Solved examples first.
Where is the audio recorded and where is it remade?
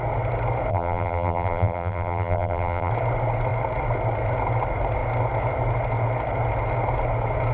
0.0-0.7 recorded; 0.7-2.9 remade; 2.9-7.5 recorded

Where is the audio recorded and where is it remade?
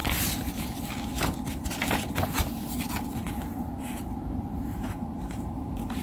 0.0-3.6 recorded; 3.6-6.0 remade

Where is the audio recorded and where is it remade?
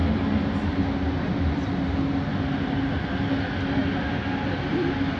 0.0-5.2 recorded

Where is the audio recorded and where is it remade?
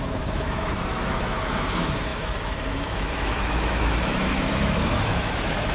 0.0-5.7 remade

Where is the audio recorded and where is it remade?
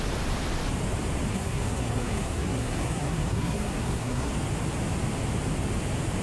0.0-1.3 recorded; 1.3-4.3 remade; 4.3-6.2 recorded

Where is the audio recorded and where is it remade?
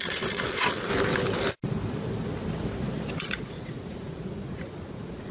0.0-0.9 remade; 0.9-3.2 recorded; 3.2-5.3 remade